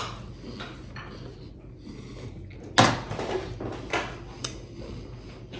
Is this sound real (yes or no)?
yes